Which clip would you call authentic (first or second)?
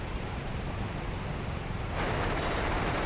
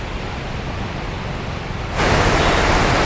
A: second